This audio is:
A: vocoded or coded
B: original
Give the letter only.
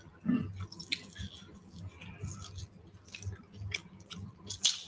B